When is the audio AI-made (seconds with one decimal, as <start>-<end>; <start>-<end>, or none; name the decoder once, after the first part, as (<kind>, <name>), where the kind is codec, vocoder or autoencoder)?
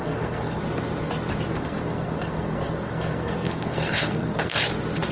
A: 0.0-0.6 (codec, SNAC); 1.5-4.6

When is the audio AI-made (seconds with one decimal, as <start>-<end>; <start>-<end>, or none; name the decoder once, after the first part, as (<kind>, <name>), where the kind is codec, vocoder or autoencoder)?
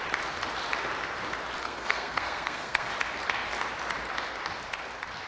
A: 1.6-2.9 (codec, SNAC)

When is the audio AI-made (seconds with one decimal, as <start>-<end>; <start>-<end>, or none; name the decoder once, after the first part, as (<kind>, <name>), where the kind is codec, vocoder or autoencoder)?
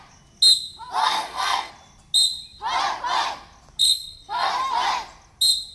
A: 1.0-1.7 (codec, SNAC); 3.8-4.5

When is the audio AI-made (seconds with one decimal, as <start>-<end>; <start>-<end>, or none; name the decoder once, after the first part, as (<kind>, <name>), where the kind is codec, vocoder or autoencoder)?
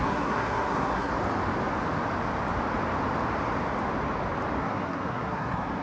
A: 0.0-1.1 (codec, SNAC); 4.6-5.8